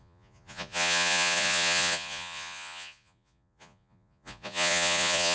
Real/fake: fake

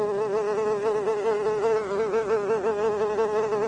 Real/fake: real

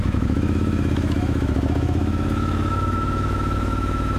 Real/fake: fake